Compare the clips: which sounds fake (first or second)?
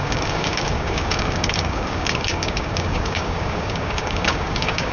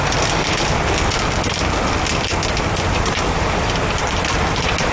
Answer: first